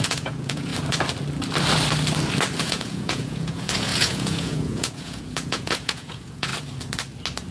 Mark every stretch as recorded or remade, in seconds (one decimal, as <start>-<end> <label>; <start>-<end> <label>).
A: 0.0-0.7 remade; 0.7-2.6 recorded; 2.6-6.5 remade; 6.5-7.5 recorded